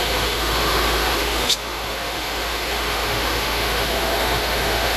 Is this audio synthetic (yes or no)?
yes